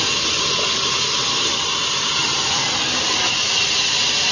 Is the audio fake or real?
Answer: real